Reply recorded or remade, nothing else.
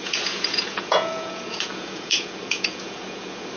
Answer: remade